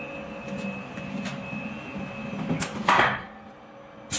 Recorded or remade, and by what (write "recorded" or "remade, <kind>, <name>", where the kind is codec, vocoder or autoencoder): recorded